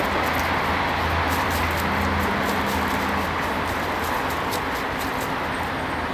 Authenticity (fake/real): real